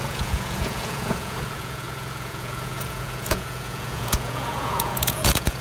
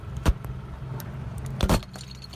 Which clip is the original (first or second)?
second